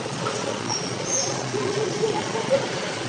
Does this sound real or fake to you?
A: fake